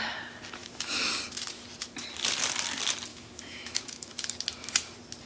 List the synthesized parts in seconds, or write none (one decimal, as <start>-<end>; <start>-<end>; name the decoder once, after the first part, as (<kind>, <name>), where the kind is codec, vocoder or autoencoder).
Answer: 0.6-1.1 (autoencoder, DAC-VAE); 3.1-4.3